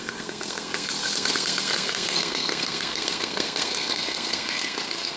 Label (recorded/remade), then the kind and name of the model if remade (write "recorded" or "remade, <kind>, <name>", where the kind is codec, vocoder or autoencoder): remade, codec, SNAC